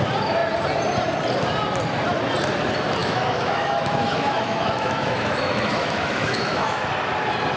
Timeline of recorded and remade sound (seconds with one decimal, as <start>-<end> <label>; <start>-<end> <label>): 0.0-3.0 recorded; 3.0-6.9 remade; 6.9-7.6 recorded